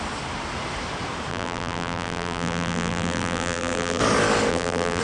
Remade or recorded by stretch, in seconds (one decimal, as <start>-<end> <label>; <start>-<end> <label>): 0.0-1.3 recorded; 1.3-4.0 remade; 4.0-4.5 recorded; 4.5-5.0 remade